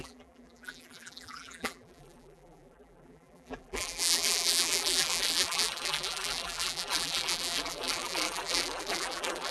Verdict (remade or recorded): remade